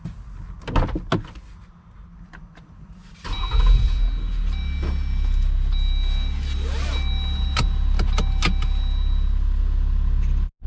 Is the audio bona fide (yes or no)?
yes